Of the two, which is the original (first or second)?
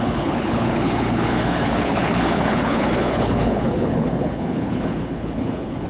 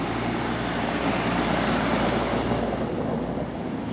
second